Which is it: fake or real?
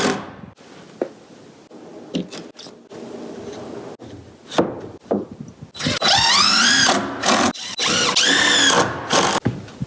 real